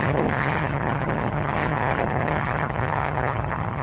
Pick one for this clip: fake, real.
fake